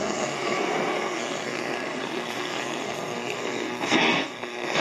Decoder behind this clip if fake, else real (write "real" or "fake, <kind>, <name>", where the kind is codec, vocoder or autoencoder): fake, codec, SNAC